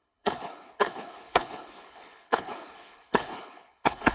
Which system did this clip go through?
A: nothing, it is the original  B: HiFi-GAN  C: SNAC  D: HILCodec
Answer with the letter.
D